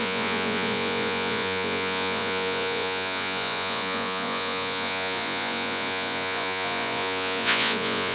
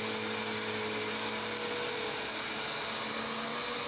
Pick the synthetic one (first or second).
first